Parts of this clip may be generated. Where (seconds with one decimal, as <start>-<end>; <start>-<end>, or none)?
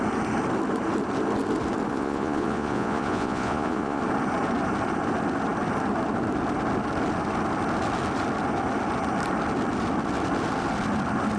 1.9-4.0